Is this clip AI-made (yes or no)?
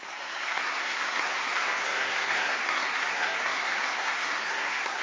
yes